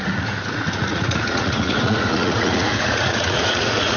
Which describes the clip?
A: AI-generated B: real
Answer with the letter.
A